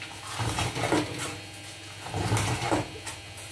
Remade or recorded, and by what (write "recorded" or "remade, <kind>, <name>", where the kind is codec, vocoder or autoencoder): recorded